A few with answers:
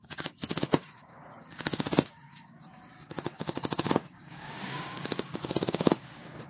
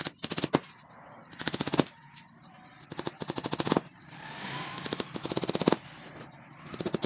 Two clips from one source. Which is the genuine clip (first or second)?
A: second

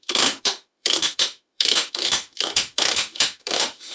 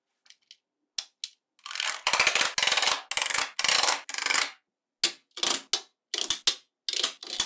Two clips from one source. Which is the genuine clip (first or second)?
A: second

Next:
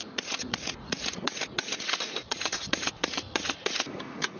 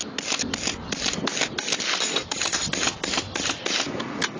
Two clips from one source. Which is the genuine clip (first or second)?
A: second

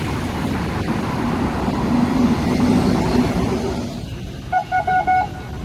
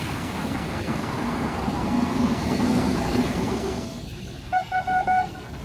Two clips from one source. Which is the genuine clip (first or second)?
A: first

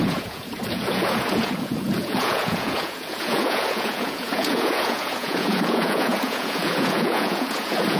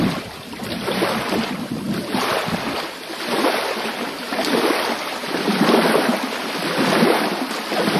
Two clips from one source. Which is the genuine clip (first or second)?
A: second